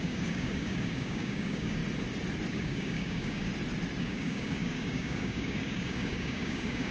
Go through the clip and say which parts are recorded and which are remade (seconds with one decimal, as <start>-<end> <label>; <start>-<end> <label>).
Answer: 0.0-1.8 remade; 1.8-2.5 recorded; 2.5-3.5 remade; 3.5-4.0 recorded; 4.0-6.9 remade